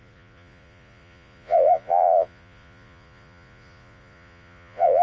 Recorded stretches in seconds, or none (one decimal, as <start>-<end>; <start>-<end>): none